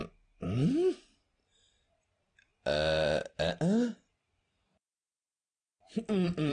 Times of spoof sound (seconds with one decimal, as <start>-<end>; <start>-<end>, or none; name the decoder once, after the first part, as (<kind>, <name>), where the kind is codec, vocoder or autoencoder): none